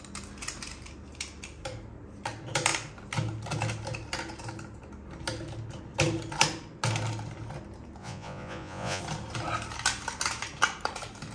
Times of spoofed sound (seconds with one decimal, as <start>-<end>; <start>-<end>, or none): 8.0-9.0